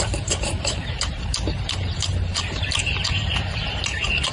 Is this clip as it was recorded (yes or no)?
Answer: no